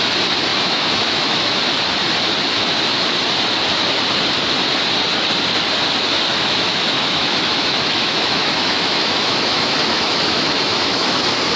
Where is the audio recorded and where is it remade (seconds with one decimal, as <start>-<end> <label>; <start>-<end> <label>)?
0.0-0.5 recorded; 0.5-1.6 remade; 1.6-6.3 recorded; 6.3-11.2 remade; 11.2-11.6 recorded